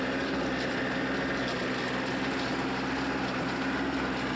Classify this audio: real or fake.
real